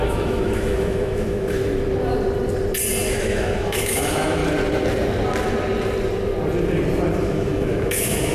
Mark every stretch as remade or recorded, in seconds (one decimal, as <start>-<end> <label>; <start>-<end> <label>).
0.0-1.6 remade; 1.6-3.1 recorded; 3.1-4.4 remade; 4.4-7.2 recorded; 7.2-8.3 remade